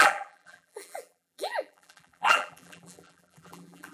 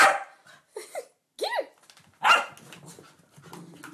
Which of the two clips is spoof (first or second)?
first